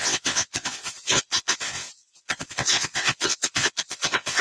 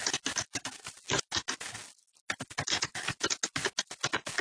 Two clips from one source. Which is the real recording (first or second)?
second